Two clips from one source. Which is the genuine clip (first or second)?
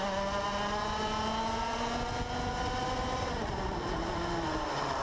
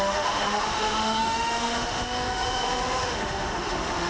first